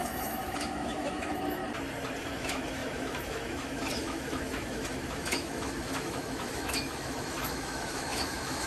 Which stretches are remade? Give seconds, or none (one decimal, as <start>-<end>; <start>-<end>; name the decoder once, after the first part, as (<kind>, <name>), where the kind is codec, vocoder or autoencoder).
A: 0.0-1.6 (autoencoder, DAC-VAE); 2.2-8.7